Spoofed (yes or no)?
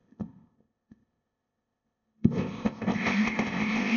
yes